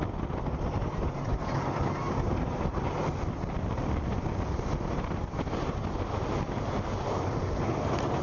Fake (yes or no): no